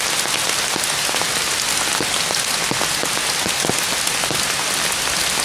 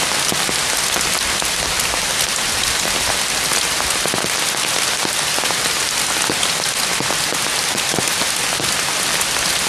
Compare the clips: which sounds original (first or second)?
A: first